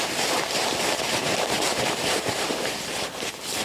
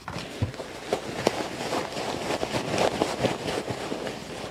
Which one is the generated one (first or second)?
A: first